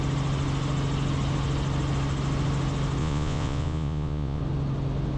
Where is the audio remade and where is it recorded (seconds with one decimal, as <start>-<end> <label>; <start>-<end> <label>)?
0.0-3.0 recorded; 3.0-4.4 remade; 4.4-5.2 recorded